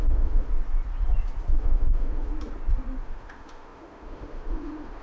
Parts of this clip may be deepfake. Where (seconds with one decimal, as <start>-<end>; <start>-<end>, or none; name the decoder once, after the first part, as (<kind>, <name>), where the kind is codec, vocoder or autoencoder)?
0.0-0.5 (autoencoder, DAC-VAE); 1.5-2.3; 3.0-5.0